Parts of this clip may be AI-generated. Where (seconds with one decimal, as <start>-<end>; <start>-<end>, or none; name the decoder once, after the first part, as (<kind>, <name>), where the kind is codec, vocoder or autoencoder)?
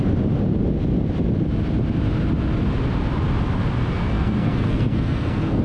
4.1-5.6 (codec, SNAC)